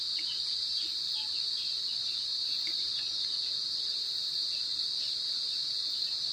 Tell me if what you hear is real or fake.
real